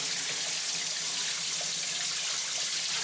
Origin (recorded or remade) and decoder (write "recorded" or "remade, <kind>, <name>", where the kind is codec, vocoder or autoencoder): recorded